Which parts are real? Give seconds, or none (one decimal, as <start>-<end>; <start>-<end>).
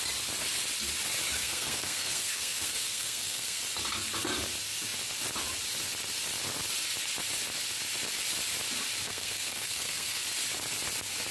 0.0-1.4; 3.6-9.1; 10.2-11.3